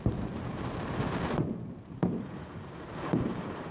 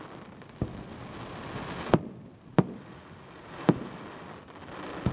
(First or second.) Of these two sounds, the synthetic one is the first